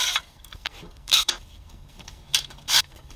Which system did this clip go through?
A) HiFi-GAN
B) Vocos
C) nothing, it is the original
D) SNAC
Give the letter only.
D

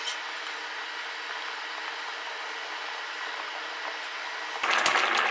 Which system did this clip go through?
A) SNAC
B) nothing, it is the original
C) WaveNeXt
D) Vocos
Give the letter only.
B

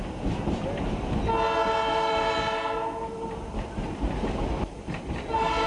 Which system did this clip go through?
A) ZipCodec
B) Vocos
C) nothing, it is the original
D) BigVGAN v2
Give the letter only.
C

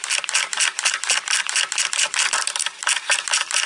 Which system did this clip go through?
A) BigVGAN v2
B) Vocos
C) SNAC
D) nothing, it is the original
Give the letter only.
A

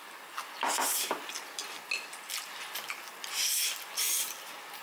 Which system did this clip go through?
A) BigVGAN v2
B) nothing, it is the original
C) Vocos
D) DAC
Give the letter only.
B